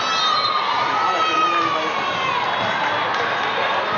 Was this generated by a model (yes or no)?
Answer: no